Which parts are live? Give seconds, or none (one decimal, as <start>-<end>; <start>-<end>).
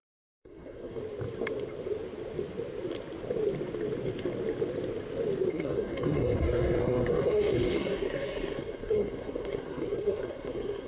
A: 1.0-5.5